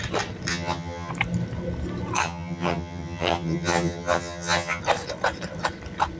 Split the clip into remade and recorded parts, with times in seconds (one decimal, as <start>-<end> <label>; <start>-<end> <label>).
0.0-0.5 recorded; 0.5-1.1 remade; 1.1-2.2 recorded; 2.2-4.8 remade; 4.8-6.2 recorded